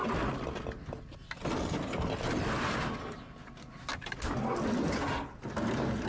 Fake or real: real